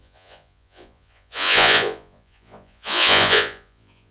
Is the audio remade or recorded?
remade